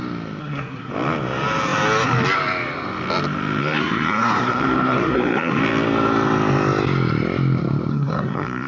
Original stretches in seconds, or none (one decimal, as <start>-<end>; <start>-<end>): 0.0-0.4; 0.9-3.6; 5.6-7.9